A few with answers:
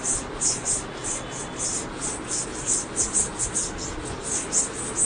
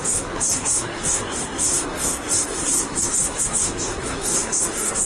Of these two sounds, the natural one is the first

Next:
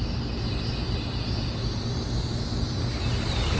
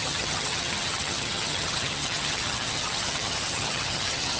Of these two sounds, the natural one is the first